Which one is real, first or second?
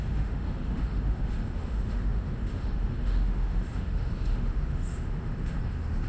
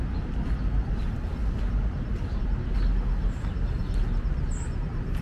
second